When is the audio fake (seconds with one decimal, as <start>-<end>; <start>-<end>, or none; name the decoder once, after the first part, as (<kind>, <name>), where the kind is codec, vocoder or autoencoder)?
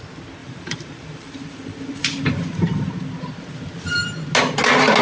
0.4-2.9 (vocoder, BigVGAN v2)